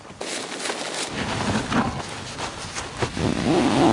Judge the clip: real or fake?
real